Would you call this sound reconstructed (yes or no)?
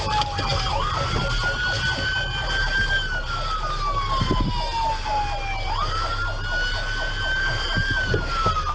no